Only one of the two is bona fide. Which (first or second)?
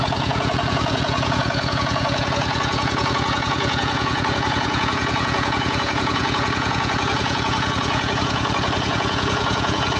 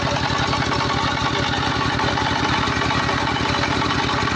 second